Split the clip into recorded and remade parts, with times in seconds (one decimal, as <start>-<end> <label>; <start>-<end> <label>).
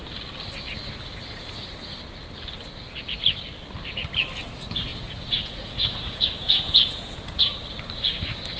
0.0-4.9 recorded; 4.9-7.6 remade; 7.6-8.6 recorded